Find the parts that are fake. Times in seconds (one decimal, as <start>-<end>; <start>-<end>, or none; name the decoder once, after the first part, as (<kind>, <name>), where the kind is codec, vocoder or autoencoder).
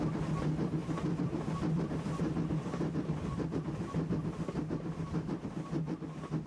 0.8-3.4 (vocoder, BigVGAN v2)